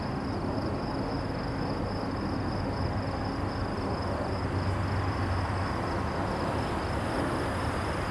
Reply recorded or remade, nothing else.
recorded